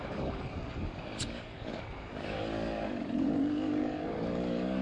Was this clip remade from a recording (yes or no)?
yes